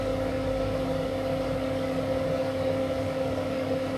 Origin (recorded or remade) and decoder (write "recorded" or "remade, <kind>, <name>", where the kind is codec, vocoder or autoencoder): remade, codec, DAC